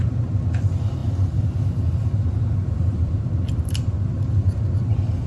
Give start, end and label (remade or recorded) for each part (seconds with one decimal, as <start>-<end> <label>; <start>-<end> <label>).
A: 0.0-5.3 remade